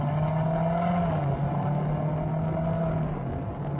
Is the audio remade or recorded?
recorded